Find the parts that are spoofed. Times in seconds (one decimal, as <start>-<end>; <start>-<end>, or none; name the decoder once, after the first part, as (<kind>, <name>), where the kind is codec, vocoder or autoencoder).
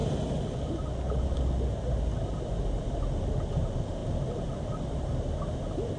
none